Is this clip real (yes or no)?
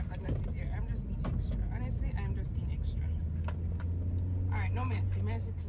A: yes